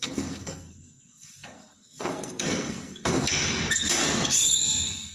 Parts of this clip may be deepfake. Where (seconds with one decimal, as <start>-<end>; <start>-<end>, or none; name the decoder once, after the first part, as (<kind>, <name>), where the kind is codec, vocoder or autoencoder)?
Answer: 0.0-5.1 (codec, SNAC)